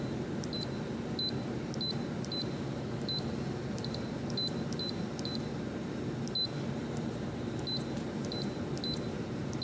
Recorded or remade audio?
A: recorded